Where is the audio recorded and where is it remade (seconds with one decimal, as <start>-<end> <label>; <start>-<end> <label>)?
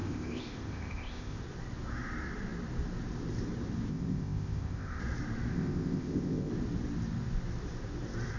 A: 0.0-1.4 remade; 1.4-3.9 recorded; 3.9-5.0 remade; 5.0-5.5 recorded; 5.5-6.5 remade; 6.5-8.4 recorded